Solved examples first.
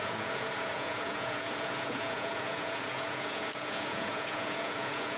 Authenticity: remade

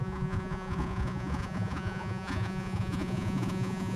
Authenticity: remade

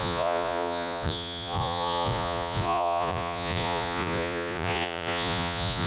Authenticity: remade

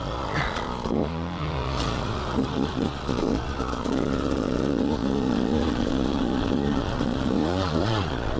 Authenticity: remade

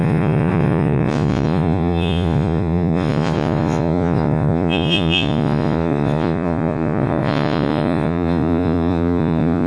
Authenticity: remade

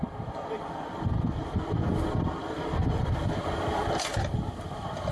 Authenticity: recorded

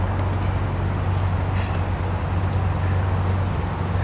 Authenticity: recorded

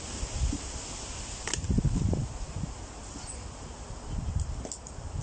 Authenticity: recorded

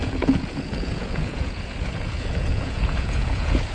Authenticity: remade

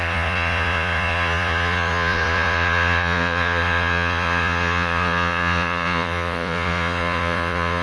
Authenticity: remade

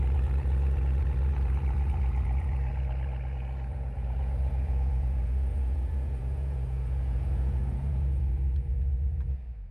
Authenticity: remade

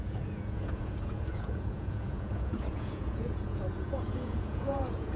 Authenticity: remade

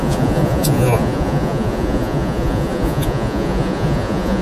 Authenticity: remade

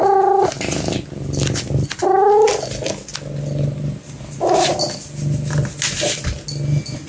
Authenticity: recorded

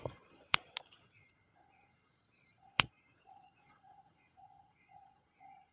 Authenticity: remade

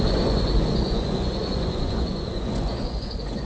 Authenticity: remade